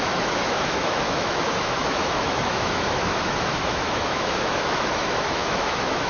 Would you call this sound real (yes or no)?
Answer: no